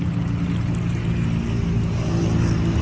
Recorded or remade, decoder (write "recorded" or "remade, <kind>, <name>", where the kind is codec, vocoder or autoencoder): recorded